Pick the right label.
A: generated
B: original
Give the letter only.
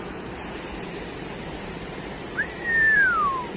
B